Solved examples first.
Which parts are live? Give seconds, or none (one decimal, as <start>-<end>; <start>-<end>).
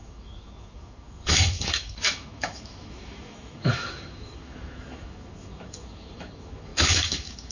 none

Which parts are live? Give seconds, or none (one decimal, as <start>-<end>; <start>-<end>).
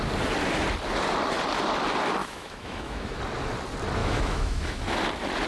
0.0-2.2; 3.2-4.0; 4.8-5.5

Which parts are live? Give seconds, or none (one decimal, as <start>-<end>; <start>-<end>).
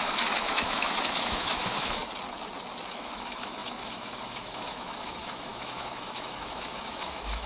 2.0-2.9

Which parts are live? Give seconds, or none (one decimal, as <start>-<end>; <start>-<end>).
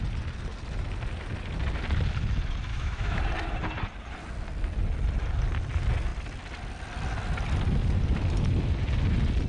0.0-2.7; 3.2-9.5